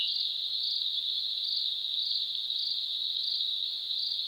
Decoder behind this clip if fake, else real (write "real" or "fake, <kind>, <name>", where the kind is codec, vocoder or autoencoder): real